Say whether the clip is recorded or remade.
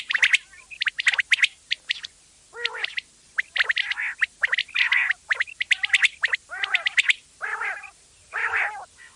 recorded